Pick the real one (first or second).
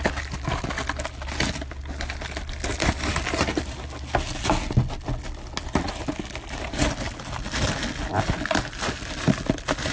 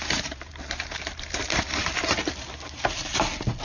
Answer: first